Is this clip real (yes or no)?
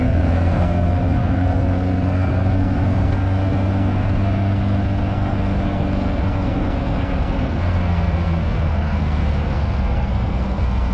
no